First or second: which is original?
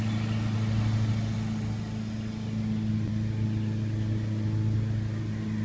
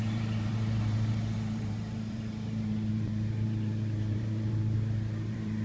first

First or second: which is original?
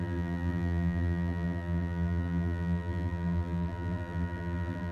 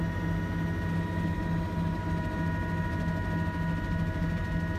second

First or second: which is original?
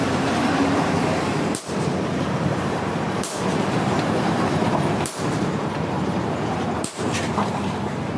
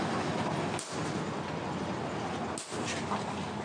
second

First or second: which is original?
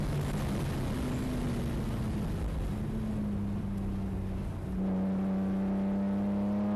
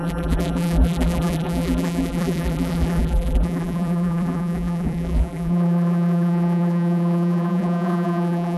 first